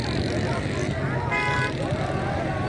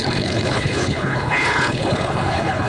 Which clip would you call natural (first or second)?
first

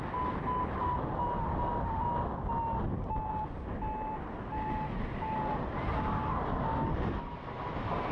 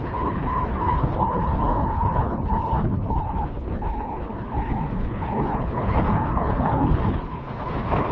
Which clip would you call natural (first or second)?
first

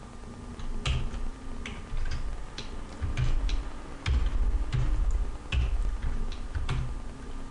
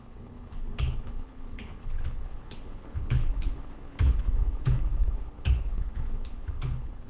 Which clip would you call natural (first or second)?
first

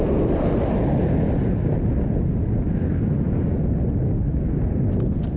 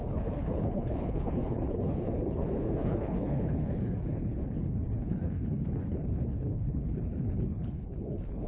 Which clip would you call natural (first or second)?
first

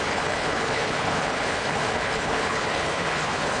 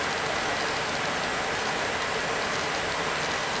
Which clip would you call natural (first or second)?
second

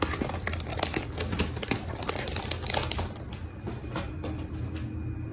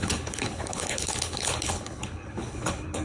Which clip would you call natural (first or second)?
first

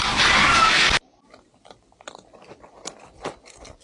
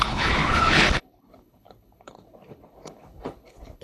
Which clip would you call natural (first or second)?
first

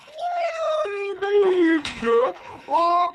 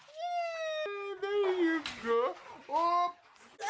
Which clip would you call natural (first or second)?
second